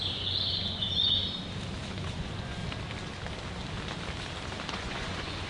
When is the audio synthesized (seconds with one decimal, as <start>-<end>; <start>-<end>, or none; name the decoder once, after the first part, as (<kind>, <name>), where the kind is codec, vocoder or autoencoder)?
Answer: 0.0-1.2 (vocoder, Vocos); 1.9-2.6; 4.7-5.5

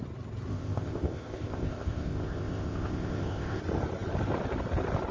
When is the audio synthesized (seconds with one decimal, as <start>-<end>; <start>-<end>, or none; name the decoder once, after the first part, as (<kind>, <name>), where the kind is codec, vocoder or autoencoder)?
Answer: 0.5-3.6 (codec, ZipCodec)

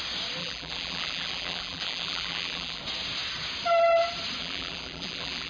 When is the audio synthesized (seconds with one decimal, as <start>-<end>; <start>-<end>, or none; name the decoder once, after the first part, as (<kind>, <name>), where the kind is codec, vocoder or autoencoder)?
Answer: 0.4-2.8 (vocoder, BigVGAN v2); 4.4-5.5